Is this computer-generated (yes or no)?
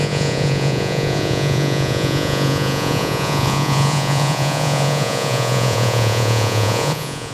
yes